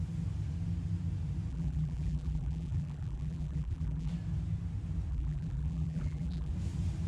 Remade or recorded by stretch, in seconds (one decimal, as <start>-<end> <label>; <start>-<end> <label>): 0.0-1.5 recorded; 1.5-4.1 remade; 4.1-5.1 recorded; 5.1-6.5 remade; 6.5-7.1 recorded